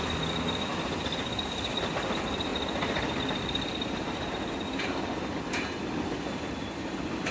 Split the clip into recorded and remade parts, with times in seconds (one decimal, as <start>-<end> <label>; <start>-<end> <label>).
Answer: 0.0-7.3 recorded